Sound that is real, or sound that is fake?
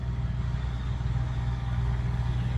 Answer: fake